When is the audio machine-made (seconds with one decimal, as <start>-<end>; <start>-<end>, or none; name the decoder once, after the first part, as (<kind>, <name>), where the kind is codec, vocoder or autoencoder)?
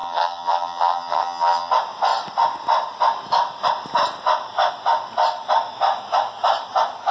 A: 0.0-1.7 (vocoder, HiFi-GAN)